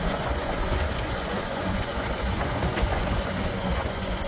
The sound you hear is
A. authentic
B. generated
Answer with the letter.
B